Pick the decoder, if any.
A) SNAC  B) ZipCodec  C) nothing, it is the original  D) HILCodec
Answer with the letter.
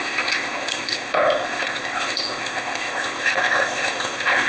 B